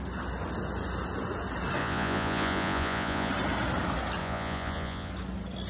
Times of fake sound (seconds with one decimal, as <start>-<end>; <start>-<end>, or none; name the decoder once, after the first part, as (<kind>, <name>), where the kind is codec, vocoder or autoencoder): 1.8-3.3 (vocoder, Vocos); 4.2-5.1